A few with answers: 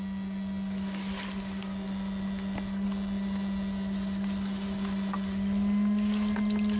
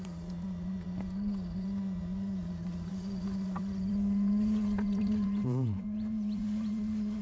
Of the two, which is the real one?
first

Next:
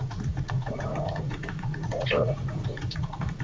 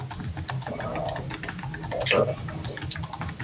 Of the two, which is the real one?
second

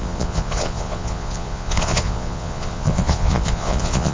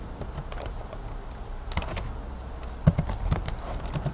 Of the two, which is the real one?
second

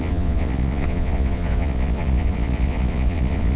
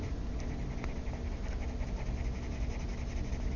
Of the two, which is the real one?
second